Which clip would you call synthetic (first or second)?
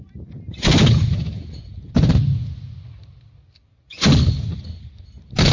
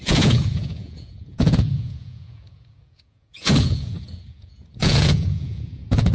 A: second